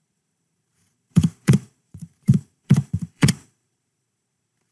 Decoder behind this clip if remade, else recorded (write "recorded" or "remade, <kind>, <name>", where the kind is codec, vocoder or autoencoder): remade, vocoder, BigVGAN v2